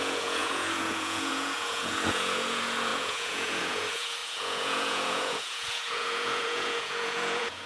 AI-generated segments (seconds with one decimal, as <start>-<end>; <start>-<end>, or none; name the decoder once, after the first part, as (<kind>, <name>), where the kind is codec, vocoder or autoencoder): 0.0-7.7 (vocoder, Vocos)